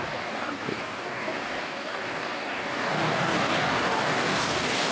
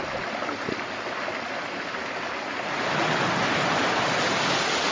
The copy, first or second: first